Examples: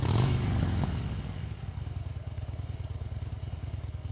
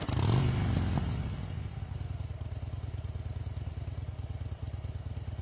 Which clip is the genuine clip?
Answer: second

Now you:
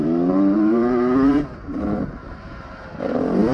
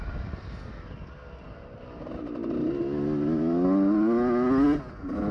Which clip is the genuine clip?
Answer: second